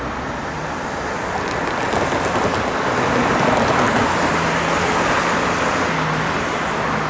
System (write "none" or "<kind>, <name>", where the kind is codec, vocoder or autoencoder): none